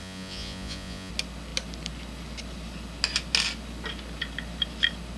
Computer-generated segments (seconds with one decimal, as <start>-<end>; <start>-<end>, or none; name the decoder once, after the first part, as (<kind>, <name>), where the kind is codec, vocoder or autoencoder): 0.0-1.1 (vocoder, Vocos)